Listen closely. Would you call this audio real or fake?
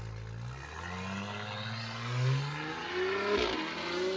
real